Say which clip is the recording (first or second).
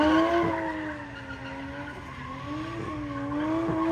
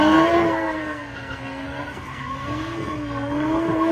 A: first